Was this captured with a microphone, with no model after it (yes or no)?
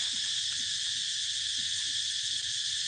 yes